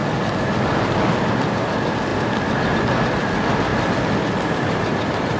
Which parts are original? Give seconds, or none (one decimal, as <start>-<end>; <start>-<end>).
0.0-5.4